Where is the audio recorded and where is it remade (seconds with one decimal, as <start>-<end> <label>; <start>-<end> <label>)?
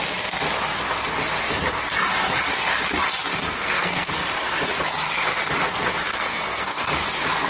0.0-3.3 recorded; 3.3-4.1 remade; 4.1-6.1 recorded; 6.1-6.9 remade; 6.9-7.5 recorded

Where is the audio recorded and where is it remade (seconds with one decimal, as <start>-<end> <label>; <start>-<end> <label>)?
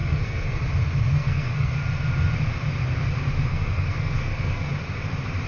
0.0-0.6 remade; 0.6-1.1 recorded; 1.1-1.7 remade; 1.7-3.5 recorded; 3.5-4.7 remade; 4.7-5.5 recorded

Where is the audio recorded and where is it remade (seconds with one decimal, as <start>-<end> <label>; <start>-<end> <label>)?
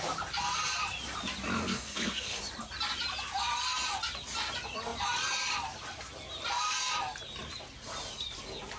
0.0-1.6 recorded; 1.6-2.4 remade; 2.4-8.8 recorded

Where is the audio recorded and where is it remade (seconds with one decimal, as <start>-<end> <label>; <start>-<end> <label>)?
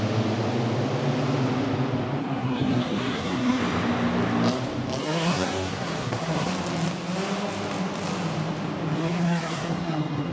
0.0-2.2 recorded; 2.2-3.6 remade; 3.6-5.0 recorded; 5.0-6.5 remade; 6.5-9.0 recorded; 9.0-10.3 remade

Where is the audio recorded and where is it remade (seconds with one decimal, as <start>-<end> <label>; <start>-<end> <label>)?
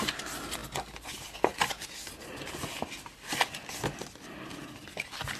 0.0-5.4 recorded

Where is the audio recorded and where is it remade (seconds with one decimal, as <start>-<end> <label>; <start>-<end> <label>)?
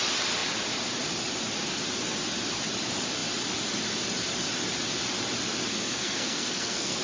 0.0-5.7 recorded; 5.7-7.0 remade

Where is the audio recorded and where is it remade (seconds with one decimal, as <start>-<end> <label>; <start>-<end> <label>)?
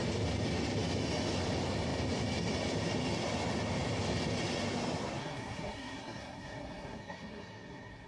0.0-5.2 recorded; 5.2-8.1 remade